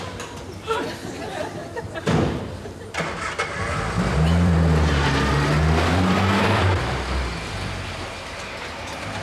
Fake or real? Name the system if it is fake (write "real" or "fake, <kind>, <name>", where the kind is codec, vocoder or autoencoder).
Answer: fake, vocoder, BigVGAN v2